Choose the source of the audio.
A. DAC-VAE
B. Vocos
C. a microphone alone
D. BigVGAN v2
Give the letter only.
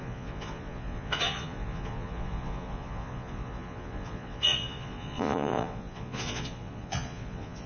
B